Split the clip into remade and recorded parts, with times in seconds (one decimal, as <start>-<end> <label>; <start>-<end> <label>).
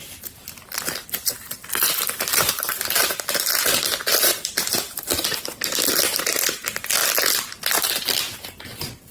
0.0-1.6 recorded; 1.6-3.6 remade; 3.6-9.1 recorded